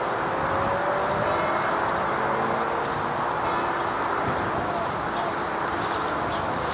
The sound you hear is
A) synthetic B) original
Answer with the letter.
A